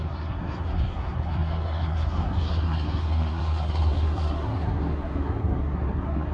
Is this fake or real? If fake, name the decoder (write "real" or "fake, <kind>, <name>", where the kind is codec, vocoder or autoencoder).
fake, codec, SNAC